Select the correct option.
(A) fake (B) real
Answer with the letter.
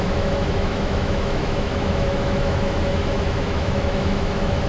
A